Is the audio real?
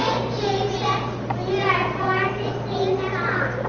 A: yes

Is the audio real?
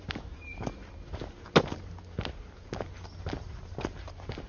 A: yes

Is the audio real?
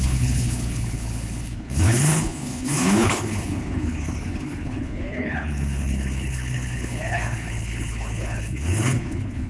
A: no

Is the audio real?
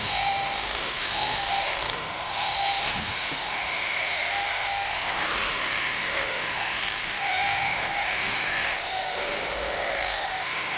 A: no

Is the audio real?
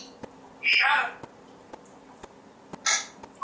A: yes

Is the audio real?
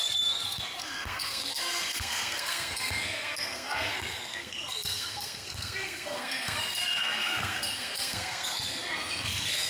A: no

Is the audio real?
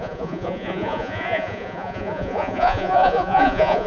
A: no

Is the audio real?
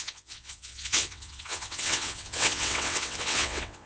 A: no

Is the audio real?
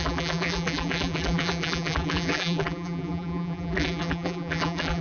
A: no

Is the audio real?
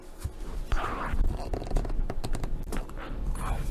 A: yes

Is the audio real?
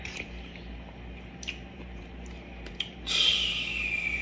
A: no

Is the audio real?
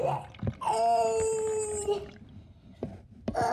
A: yes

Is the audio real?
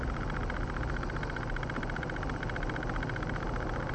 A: yes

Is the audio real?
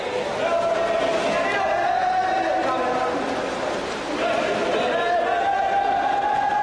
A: yes